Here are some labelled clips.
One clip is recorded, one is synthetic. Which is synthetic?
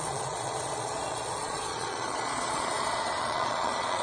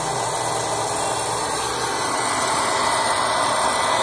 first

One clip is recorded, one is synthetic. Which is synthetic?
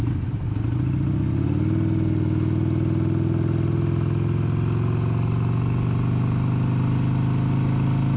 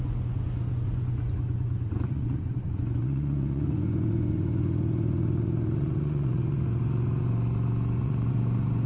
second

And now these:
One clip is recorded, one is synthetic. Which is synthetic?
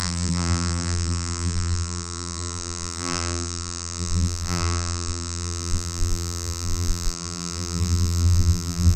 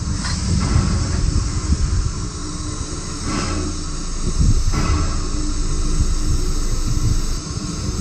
first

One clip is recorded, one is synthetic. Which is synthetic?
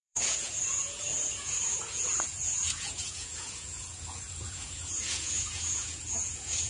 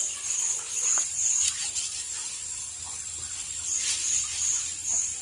first